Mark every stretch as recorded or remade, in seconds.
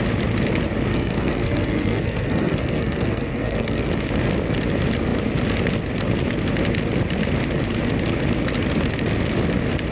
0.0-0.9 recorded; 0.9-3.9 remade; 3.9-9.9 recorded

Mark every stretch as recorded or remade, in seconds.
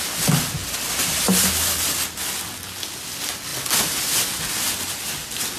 0.0-5.6 recorded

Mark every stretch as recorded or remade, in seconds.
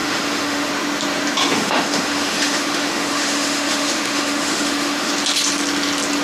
0.0-0.7 remade; 0.7-1.4 recorded; 1.4-5.1 remade; 5.1-6.2 recorded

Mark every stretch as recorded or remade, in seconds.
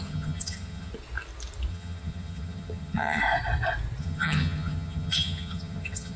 0.0-0.9 remade; 0.9-1.7 recorded; 1.7-3.2 remade; 3.2-4.0 recorded; 4.0-6.2 remade